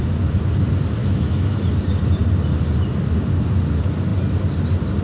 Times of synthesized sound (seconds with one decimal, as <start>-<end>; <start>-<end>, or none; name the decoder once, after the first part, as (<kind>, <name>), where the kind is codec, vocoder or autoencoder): 1.0-1.6 (autoencoder, DAC-VAE)